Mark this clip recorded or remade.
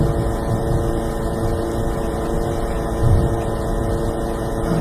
recorded